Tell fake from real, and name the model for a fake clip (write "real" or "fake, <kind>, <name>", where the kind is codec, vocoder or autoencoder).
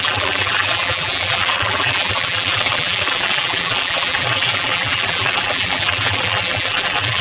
fake, vocoder, BigVGAN v2